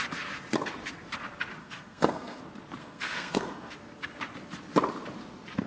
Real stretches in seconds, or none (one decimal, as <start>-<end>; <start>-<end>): 0.0-1.6; 2.4-2.8; 3.7-5.7